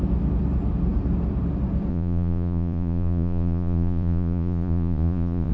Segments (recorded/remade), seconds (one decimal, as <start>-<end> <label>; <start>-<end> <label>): 0.0-1.9 recorded; 1.9-5.5 remade